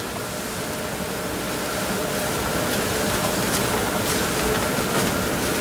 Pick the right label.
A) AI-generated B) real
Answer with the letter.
B